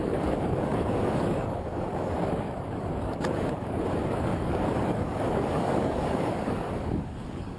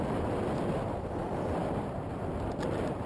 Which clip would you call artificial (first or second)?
first